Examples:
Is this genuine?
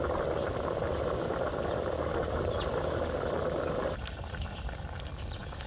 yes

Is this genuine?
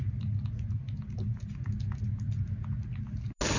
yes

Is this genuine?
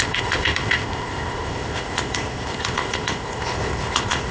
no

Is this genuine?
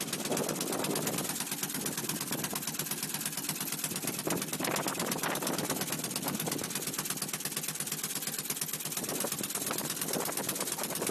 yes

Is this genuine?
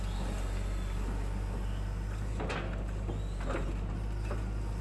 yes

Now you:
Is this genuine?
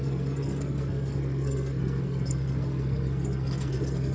no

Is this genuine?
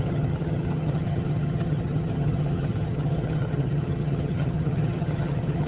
no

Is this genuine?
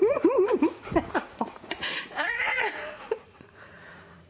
no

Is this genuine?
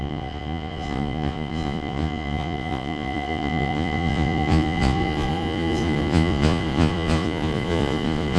no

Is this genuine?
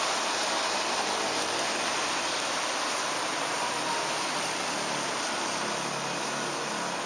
yes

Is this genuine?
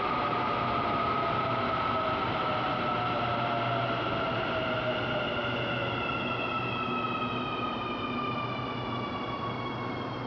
yes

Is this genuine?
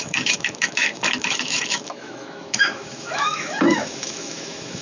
no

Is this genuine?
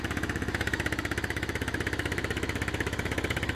no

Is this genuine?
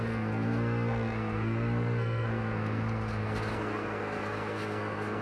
no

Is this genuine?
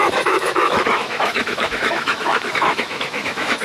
no